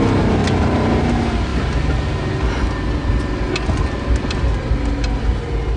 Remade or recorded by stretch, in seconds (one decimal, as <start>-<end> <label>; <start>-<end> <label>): 0.0-5.8 recorded